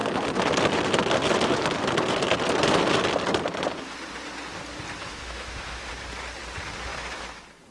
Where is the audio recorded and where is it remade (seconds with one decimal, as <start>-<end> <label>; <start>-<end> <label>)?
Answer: 0.0-5.0 recorded; 5.0-5.9 remade; 5.9-7.7 recorded